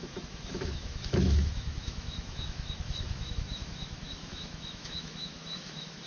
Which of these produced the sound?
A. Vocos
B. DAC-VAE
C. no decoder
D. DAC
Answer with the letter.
B